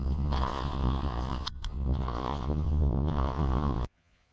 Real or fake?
fake